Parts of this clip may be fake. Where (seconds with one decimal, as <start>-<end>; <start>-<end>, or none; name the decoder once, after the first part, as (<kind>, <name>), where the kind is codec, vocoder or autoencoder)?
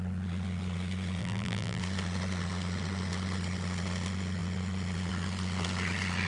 1.2-1.8 (vocoder, BigVGAN v2)